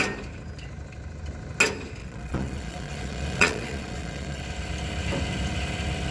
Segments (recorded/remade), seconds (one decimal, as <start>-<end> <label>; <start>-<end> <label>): 0.0-2.0 recorded; 2.0-4.4 remade; 4.4-6.1 recorded